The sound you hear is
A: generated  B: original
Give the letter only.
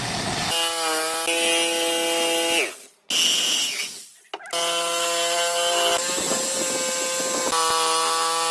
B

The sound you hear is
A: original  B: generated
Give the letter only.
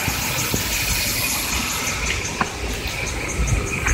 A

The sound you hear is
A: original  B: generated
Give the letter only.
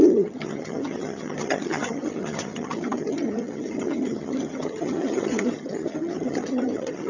B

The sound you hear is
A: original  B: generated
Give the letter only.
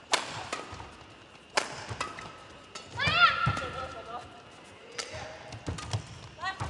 A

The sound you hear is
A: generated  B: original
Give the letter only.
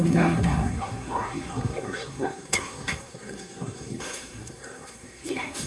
A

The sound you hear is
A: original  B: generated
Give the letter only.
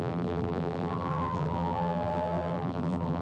B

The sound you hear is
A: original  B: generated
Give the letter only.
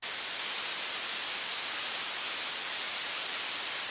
A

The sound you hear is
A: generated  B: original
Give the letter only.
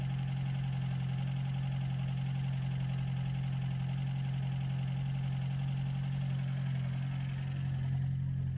B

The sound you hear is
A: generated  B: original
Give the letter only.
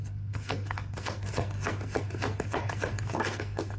A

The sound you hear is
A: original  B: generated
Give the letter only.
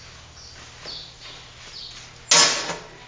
A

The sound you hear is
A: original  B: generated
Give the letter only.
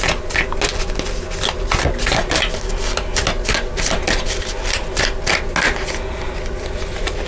A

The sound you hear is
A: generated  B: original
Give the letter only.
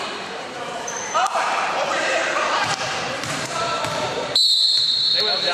A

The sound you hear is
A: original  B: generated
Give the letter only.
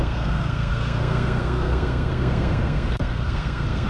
B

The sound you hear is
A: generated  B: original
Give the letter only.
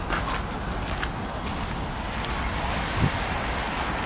B